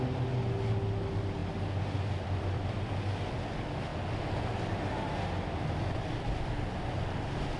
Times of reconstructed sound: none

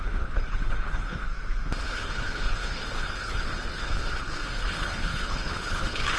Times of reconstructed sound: 0.0-1.3 (codec, HILCodec); 1.8-6.2

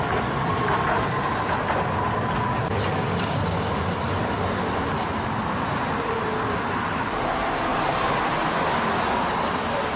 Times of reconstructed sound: none

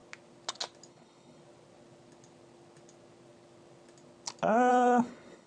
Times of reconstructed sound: 0.9-1.4 (codec, HILCodec); 4.7-5.5

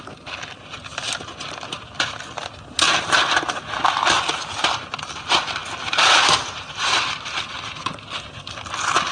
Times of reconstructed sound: none